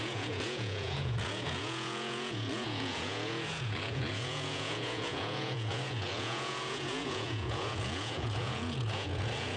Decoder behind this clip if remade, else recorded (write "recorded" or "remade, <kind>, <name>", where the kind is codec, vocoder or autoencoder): remade, vocoder, Vocos